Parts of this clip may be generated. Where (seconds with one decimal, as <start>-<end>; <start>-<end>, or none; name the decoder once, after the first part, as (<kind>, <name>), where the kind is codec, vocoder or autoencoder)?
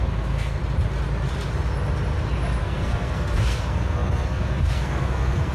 0.0-0.6 (codec, SNAC); 2.6-5.5